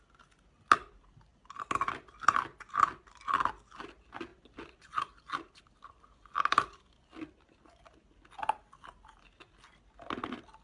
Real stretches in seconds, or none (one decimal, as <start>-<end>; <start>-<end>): 0.0-10.6